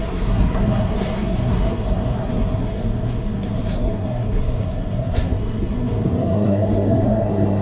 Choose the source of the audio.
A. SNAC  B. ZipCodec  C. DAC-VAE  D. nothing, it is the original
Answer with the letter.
A